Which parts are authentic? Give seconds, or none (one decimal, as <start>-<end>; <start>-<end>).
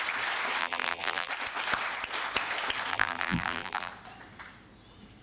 0.0-0.6; 1.3-2.9; 3.9-5.2